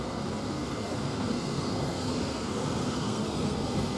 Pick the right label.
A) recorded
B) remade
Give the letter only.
B